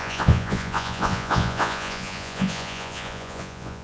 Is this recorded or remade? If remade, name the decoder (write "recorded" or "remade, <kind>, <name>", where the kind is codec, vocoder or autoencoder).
remade, vocoder, Vocos